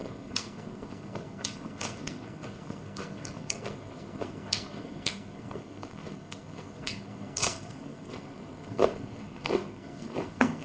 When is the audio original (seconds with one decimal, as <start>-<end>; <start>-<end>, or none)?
none